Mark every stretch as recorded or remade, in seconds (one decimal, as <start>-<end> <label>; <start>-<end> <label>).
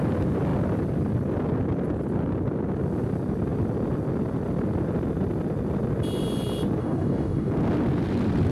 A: 0.0-6.8 recorded; 6.8-7.5 remade; 7.5-8.5 recorded